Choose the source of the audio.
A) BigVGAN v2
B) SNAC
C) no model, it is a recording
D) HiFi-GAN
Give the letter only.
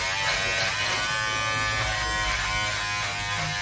C